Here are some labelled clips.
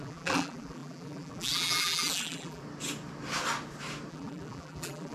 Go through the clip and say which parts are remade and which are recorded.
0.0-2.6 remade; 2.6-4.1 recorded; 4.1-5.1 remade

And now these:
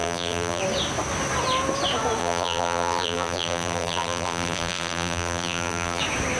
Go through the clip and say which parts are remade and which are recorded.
0.0-0.6 remade; 0.6-2.2 recorded; 2.2-6.0 remade; 6.0-6.4 recorded

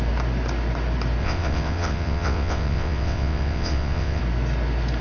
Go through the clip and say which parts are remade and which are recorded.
0.0-1.2 recorded; 1.2-4.2 remade; 4.2-5.0 recorded

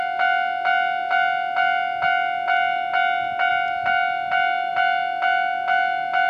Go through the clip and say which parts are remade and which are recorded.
0.0-6.3 recorded

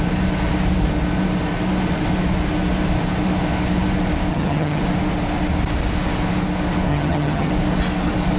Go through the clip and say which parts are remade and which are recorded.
0.0-4.3 recorded; 4.3-4.8 remade; 4.8-6.9 recorded; 6.9-7.5 remade; 7.5-8.4 recorded

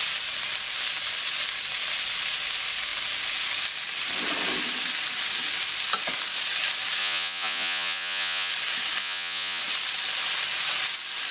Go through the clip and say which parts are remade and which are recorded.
0.0-7.0 recorded; 7.0-8.5 remade; 8.5-9.0 recorded; 9.0-9.6 remade; 9.6-11.3 recorded